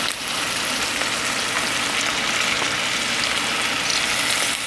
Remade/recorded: recorded